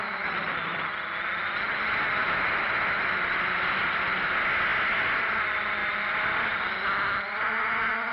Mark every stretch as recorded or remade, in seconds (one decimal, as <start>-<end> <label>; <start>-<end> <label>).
0.0-2.2 recorded; 2.2-2.7 remade; 2.7-8.1 recorded